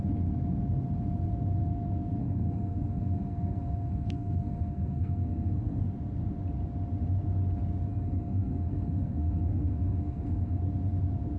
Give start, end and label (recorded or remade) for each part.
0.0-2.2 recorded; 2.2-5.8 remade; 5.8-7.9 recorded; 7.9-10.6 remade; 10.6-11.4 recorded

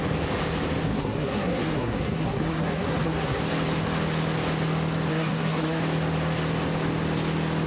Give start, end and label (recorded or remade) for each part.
0.0-0.9 recorded; 0.9-3.4 remade; 3.4-5.1 recorded; 5.1-5.8 remade; 5.8-7.7 recorded

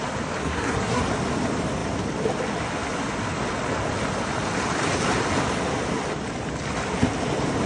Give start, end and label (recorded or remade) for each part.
0.0-0.4 recorded; 0.4-1.0 remade; 1.0-7.7 recorded

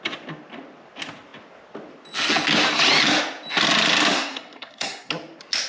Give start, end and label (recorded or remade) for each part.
0.0-4.1 recorded; 4.1-5.1 remade; 5.1-5.7 recorded

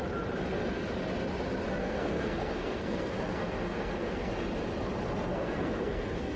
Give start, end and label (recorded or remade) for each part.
0.0-1.8 recorded; 1.8-4.3 remade; 4.3-5.3 recorded; 5.3-6.4 remade

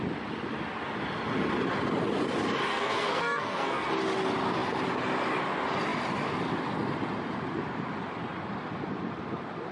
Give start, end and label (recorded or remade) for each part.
0.0-2.7 recorded; 2.7-3.9 remade; 3.9-9.7 recorded

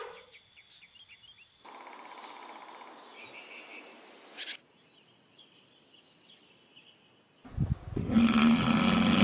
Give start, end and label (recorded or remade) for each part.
0.0-9.2 recorded

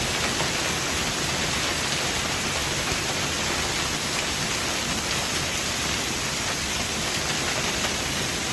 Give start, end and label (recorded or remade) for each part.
0.0-8.5 recorded